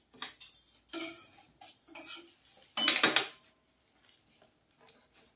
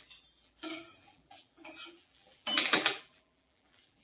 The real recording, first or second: first